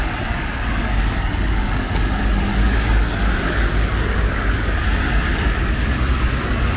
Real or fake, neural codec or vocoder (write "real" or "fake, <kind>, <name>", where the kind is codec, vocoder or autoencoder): fake, codec, DAC